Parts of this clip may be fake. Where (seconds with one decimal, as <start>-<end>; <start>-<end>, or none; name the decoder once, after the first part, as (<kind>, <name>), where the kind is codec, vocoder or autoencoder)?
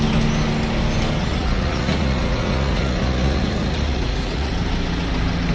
1.2-4.5 (vocoder, Vocos)